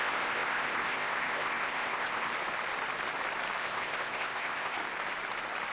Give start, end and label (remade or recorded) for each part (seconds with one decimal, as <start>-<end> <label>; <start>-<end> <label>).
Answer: 0.0-2.3 remade; 2.3-3.6 recorded; 3.6-4.8 remade; 4.8-5.7 recorded